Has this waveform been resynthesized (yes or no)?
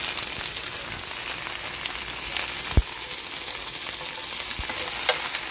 no